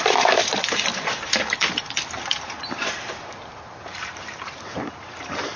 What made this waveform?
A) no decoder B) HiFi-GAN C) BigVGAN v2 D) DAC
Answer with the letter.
C